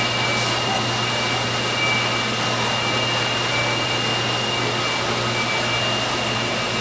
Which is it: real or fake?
real